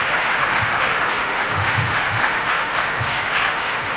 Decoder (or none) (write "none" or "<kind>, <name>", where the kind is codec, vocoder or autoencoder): autoencoder, DAC-VAE